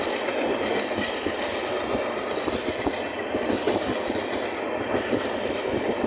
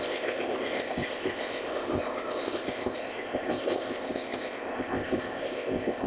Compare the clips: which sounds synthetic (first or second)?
second